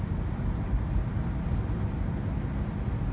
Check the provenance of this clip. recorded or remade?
recorded